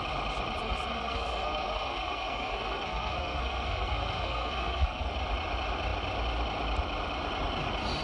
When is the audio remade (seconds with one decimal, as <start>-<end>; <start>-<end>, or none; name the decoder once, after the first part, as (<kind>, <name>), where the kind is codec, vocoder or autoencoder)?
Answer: 0.6-5.1 (codec, SNAC)